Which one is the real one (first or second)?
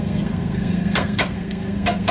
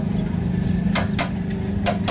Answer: second